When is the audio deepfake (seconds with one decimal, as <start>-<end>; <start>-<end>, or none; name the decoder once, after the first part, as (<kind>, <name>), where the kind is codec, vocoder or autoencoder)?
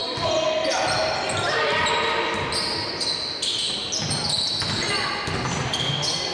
none